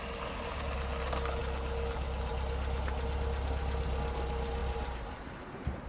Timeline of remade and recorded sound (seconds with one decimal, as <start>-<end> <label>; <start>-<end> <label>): 0.0-4.6 recorded; 4.6-5.9 remade